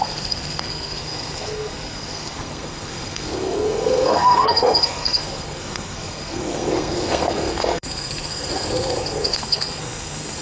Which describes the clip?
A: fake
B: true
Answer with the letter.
A